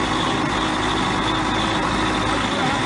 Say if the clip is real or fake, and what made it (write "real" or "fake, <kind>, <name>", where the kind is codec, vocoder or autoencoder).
real